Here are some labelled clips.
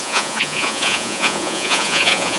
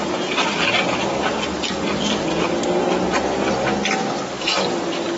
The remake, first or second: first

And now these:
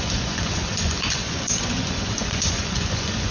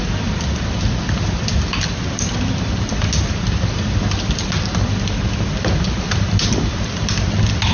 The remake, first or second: first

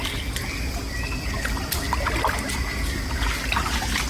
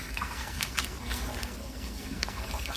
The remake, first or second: second